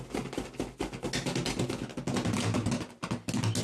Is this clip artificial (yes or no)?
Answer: no